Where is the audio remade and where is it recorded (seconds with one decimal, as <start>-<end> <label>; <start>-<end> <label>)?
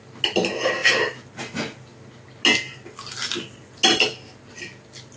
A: 0.0-5.2 recorded